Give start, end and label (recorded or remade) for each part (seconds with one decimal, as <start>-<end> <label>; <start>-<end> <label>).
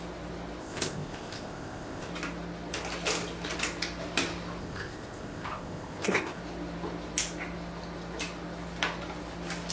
0.0-0.6 recorded; 0.6-2.1 remade; 2.1-4.6 recorded; 4.6-6.4 remade; 6.4-9.7 recorded